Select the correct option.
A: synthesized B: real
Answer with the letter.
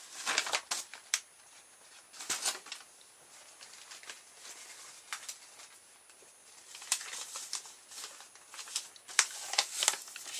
B